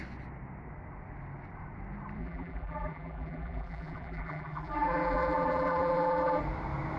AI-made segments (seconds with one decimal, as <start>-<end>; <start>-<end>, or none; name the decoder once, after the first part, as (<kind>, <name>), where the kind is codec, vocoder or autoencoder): 2.2-6.4 (vocoder, BigVGAN v2)